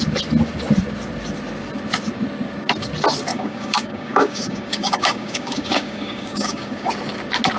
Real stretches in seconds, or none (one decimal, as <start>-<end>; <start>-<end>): 0.0-3.3; 6.9-7.6